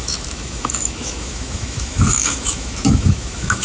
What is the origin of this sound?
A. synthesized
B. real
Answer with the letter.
A